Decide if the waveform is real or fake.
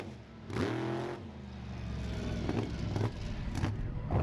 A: real